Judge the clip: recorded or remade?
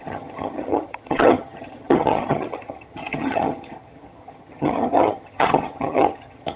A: remade